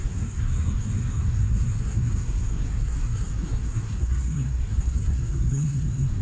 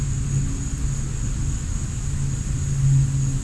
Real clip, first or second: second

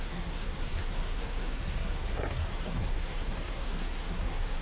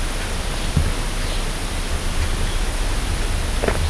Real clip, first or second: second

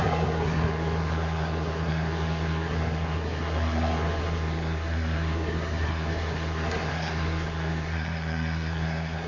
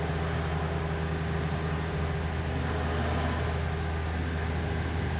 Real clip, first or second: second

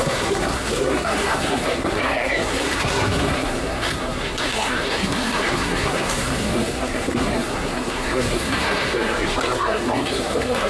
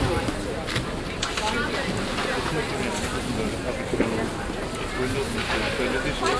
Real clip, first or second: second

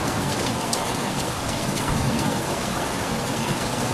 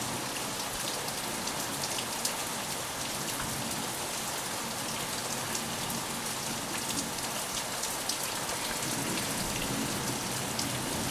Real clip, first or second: second